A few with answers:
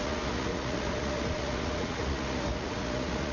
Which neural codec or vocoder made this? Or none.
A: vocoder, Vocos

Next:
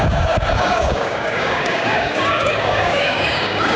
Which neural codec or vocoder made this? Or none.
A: codec, DAC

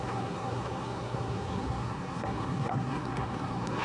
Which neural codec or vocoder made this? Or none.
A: codec, SNAC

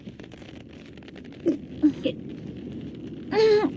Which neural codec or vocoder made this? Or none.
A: none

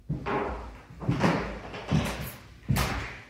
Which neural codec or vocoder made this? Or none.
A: none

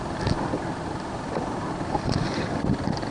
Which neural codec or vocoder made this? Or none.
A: none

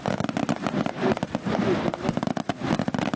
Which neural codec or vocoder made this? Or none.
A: none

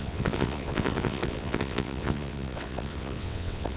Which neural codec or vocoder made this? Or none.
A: vocoder, WaveNeXt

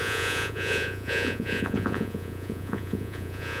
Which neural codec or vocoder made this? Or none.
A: vocoder, Vocos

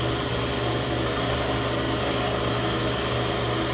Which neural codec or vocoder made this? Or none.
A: none